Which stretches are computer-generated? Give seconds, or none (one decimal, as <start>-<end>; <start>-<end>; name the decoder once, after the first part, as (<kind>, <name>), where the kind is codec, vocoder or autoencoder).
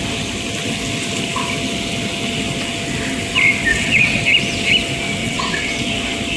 3.7-4.2 (vocoder, WaveNeXt); 5.2-5.7